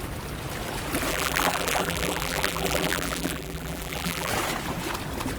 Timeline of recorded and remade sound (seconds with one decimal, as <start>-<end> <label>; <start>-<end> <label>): 0.0-1.1 recorded; 1.1-4.3 remade; 4.3-5.4 recorded